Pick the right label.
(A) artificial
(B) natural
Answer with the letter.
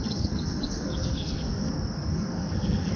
A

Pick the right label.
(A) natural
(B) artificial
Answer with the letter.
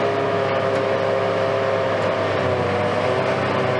A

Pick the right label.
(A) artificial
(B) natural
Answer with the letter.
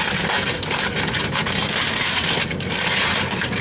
B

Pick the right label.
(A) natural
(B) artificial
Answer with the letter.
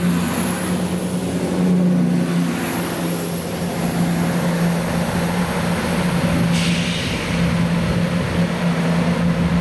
A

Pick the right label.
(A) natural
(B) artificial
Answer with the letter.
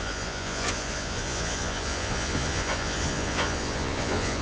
B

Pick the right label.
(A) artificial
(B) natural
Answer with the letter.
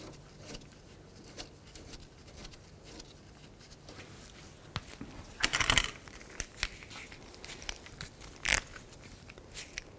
B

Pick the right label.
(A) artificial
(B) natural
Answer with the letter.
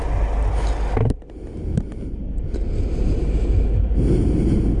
B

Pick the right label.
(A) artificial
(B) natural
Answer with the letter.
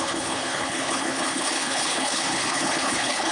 A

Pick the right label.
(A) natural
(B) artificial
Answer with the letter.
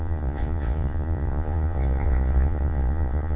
B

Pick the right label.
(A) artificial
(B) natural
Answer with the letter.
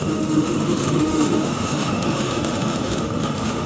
A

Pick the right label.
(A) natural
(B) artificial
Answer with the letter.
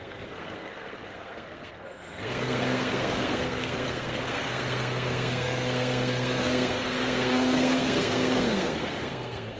B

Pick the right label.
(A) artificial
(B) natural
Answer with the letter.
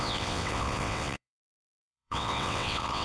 A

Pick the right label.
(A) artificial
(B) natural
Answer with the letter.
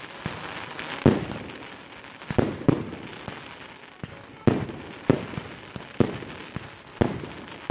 B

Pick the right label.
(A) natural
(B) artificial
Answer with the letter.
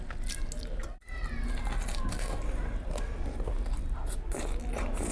A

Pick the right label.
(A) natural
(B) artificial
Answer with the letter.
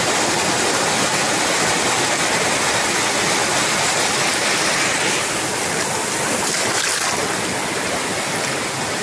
A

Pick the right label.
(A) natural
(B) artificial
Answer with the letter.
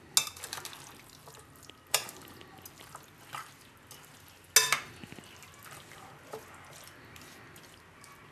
A